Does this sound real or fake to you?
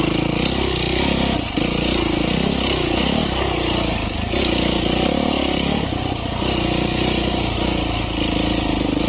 real